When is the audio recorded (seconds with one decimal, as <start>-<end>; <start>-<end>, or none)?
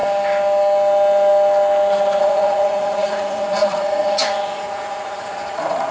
0.0-2.2